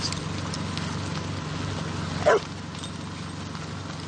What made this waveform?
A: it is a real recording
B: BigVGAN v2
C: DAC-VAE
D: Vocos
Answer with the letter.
A